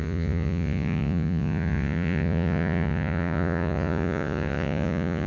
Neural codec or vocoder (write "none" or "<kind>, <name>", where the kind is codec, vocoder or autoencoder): vocoder, Vocos